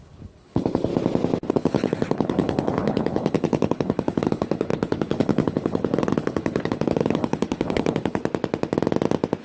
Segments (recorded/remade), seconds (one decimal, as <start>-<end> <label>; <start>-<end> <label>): 0.0-0.9 remade; 0.9-1.5 recorded; 1.5-8.2 remade; 8.2-9.4 recorded